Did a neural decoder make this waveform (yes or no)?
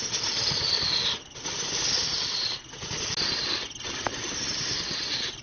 no